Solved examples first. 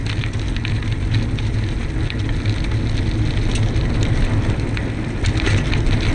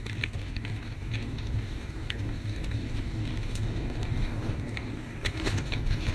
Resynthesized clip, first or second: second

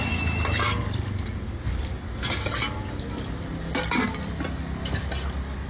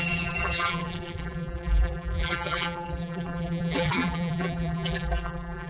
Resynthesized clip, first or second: second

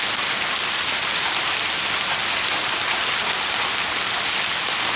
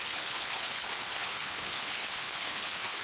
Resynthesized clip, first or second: second